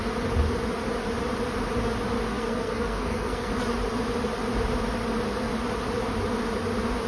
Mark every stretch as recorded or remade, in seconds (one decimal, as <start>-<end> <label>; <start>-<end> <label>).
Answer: 0.0-2.3 recorded; 2.3-3.5 remade; 3.5-7.1 recorded